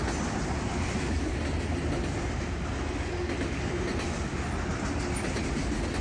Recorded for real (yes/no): yes